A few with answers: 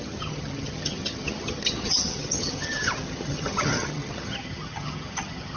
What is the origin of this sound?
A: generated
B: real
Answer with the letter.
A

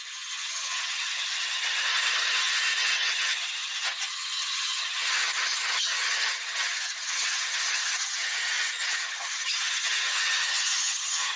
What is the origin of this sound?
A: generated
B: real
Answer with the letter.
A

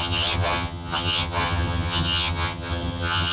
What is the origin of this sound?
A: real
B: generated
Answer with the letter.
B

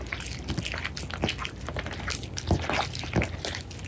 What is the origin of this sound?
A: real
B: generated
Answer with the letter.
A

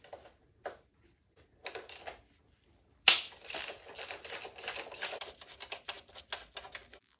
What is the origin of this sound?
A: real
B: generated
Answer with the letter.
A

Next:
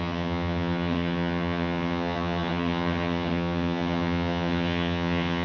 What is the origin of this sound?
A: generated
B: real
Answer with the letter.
A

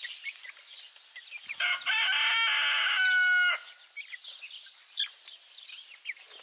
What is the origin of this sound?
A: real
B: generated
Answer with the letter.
A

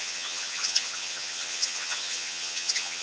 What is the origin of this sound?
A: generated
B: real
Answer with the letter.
A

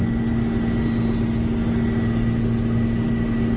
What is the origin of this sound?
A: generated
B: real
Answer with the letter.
B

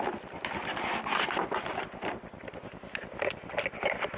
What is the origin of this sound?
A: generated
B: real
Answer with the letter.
B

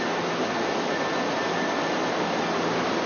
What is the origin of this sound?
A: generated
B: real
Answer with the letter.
B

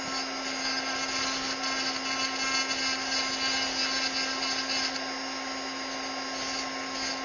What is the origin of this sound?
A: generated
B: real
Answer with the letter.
B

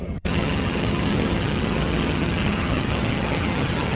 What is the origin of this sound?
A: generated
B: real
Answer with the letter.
A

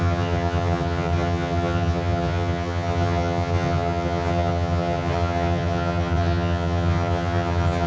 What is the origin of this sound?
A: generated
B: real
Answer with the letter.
A